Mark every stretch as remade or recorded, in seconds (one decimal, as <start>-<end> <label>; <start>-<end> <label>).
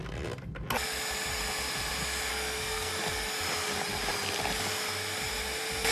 0.0-2.3 recorded; 2.3-2.9 remade; 2.9-5.9 recorded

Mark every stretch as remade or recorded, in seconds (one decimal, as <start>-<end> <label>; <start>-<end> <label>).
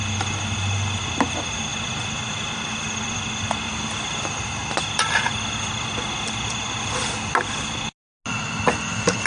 0.0-9.3 recorded